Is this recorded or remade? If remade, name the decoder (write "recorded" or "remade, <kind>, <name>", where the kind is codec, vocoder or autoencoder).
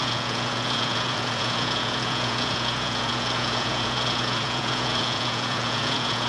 remade, vocoder, Vocos